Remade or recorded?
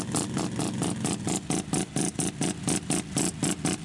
recorded